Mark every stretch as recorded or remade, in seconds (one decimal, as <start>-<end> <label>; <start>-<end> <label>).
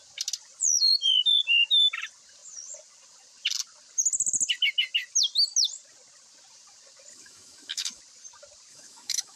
0.0-7.1 recorded; 7.1-8.0 remade; 8.0-8.7 recorded; 8.7-9.4 remade